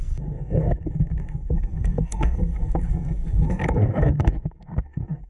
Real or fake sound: fake